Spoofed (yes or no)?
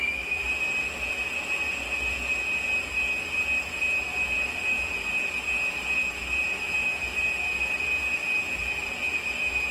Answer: no